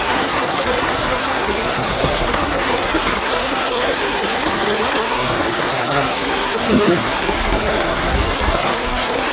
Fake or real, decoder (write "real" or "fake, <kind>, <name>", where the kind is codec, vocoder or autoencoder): fake, codec, SNAC